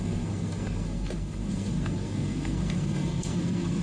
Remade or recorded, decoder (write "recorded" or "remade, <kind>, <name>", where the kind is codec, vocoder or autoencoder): remade, codec, SNAC